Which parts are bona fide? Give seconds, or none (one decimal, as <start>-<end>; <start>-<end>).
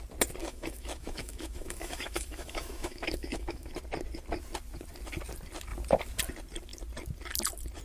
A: 0.0-0.4; 3.7-7.8